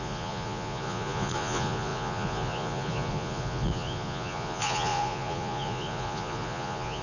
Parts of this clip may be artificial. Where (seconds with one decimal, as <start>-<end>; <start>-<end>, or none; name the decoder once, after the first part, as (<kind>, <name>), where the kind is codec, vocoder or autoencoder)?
0.0-7.0 (vocoder, Vocos)